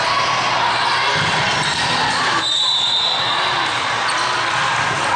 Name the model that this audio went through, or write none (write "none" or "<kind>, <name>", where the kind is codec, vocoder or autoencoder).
none